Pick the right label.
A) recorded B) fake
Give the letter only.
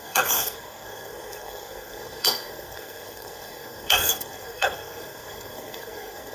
B